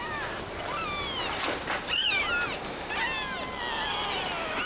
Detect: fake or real real